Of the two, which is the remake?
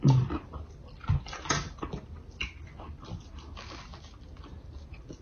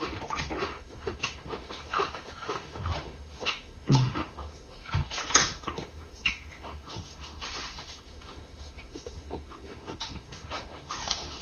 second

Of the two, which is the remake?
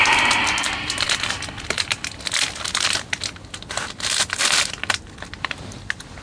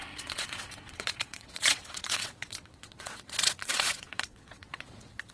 second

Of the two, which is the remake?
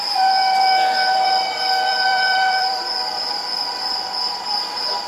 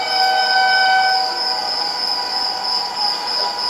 first